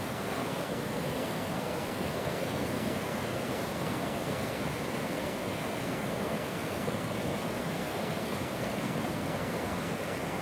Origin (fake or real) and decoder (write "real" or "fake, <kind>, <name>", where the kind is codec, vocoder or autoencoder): fake, codec, SNAC